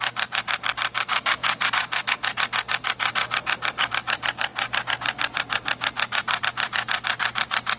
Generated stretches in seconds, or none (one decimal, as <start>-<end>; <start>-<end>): 0.0-1.4; 3.9-4.5; 6.4-7.8

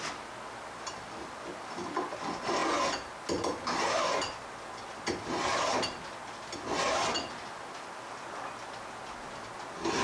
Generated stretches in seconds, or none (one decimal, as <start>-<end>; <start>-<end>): none

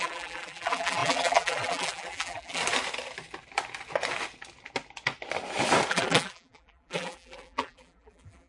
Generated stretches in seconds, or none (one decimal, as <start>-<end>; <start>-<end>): 0.0-2.6; 5.9-8.5